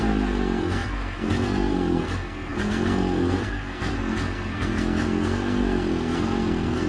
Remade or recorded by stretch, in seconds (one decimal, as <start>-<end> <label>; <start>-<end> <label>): 0.0-6.9 remade